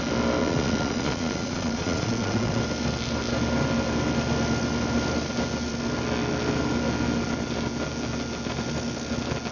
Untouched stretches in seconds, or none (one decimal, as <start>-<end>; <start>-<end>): 0.0-0.4; 2.6-9.5

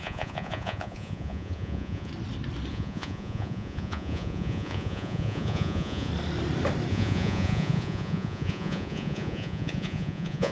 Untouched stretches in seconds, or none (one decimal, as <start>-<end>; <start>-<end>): 2.1-2.7; 6.1-6.9